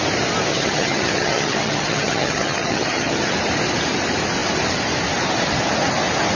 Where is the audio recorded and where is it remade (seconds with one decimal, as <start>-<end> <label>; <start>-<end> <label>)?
0.0-0.5 recorded; 0.5-3.3 remade; 3.3-6.3 recorded